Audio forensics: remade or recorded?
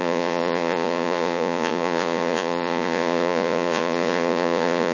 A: remade